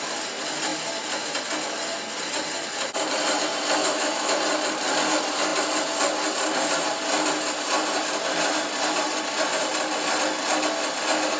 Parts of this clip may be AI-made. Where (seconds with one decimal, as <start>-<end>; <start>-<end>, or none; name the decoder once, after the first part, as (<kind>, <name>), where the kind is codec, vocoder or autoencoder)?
3.8-4.4 (autoencoder, DAC-VAE)